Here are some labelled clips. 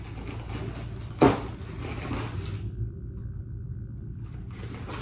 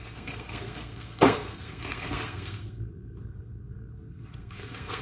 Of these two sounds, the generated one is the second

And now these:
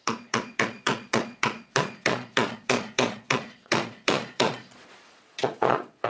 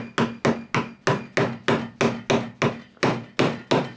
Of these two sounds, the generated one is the first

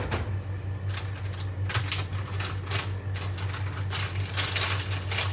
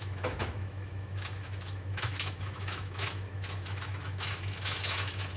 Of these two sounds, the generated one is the second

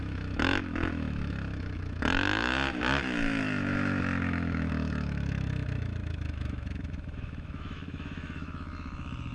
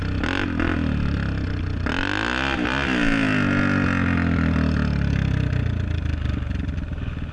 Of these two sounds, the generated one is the first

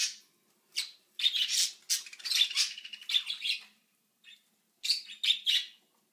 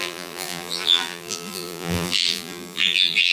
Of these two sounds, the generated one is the second